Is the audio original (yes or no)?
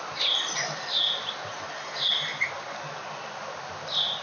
yes